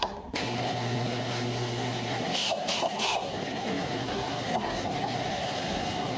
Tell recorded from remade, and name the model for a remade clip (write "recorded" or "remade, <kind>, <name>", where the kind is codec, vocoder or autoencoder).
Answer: remade, codec, SNAC